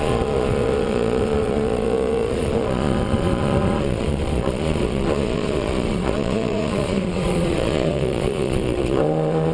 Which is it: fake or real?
fake